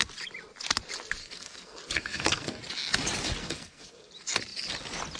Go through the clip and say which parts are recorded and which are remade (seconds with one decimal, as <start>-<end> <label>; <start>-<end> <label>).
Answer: 0.0-1.2 recorded; 1.2-2.6 remade; 2.6-3.4 recorded; 3.4-4.1 remade; 4.1-5.2 recorded